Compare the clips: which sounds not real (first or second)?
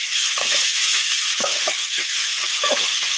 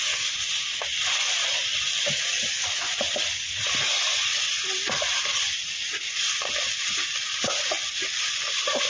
first